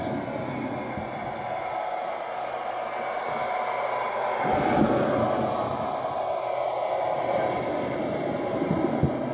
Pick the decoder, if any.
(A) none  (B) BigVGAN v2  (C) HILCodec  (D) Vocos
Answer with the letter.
A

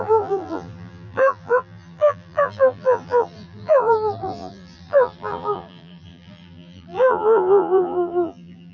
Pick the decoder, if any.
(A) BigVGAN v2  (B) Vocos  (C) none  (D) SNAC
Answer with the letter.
A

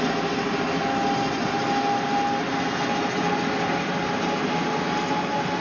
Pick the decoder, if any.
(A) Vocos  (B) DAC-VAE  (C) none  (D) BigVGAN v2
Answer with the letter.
C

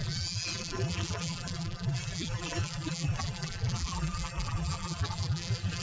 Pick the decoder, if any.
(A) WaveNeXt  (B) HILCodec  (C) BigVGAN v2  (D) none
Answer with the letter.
C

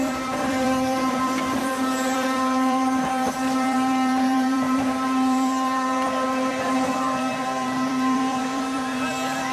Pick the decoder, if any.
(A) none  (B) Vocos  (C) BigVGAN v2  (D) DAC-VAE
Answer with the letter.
C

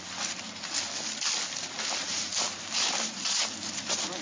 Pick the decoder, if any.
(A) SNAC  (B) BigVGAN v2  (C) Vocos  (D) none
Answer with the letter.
B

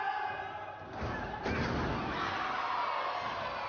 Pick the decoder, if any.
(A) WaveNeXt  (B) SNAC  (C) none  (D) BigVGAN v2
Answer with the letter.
C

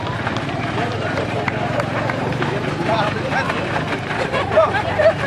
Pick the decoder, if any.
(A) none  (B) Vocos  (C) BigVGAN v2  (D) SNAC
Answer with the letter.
C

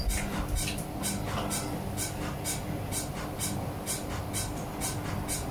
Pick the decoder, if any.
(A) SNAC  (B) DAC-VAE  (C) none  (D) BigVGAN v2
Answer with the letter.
C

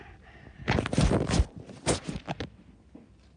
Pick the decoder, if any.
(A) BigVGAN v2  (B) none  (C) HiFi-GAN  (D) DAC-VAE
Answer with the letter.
B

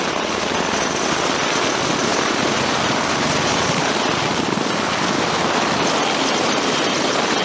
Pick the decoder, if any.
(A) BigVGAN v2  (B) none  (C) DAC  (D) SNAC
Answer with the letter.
B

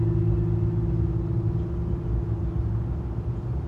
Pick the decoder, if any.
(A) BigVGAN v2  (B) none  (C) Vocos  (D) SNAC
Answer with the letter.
B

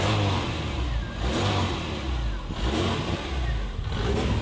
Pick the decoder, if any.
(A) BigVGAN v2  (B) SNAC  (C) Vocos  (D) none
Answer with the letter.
D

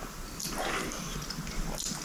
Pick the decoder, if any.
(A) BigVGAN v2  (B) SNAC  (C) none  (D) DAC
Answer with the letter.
C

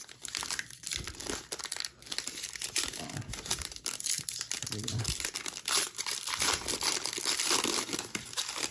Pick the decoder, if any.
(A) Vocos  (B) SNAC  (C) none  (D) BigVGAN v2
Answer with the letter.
D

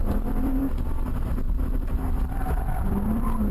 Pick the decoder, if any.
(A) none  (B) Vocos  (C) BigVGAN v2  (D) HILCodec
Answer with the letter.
C